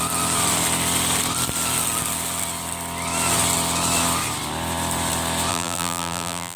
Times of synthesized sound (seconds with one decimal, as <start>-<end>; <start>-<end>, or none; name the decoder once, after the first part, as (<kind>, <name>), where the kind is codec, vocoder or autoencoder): 5.5-6.6 (vocoder, BigVGAN v2)